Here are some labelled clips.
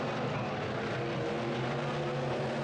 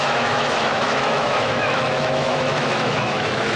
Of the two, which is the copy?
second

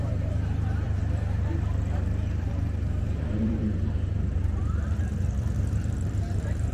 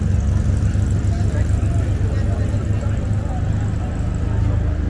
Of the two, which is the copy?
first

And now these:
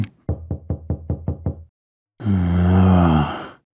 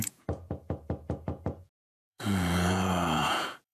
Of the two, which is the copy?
second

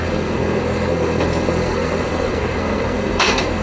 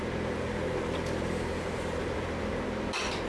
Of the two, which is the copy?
first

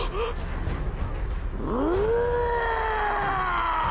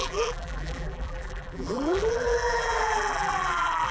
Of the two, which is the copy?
second